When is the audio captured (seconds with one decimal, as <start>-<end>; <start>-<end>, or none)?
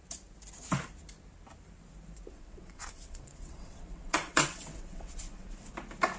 0.0-2.3; 5.7-6.2